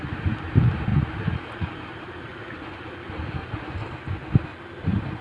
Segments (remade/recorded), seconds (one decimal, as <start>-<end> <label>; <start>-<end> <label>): 0.0-0.9 remade; 0.9-1.7 recorded; 1.7-2.3 remade; 2.3-5.2 recorded